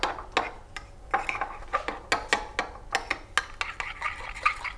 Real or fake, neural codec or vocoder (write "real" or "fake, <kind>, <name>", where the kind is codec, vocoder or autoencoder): real